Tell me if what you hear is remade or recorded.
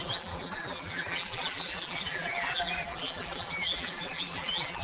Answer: remade